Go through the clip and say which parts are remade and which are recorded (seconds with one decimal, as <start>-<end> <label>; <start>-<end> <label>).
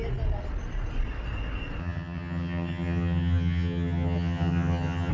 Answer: 0.0-1.8 recorded; 1.8-5.1 remade